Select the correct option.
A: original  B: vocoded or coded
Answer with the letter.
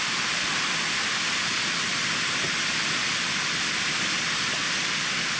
B